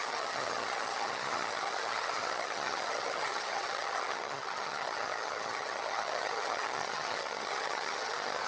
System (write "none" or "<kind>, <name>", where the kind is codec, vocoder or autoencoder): vocoder, HiFi-GAN